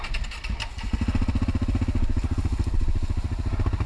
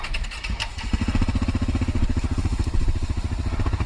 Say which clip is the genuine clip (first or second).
first